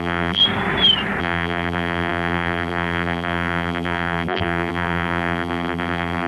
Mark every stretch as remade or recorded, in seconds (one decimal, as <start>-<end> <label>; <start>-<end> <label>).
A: 0.0-0.4 remade; 0.4-1.2 recorded; 1.2-6.3 remade